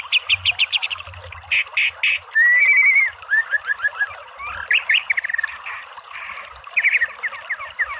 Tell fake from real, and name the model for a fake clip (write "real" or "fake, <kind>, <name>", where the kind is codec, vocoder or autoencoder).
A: real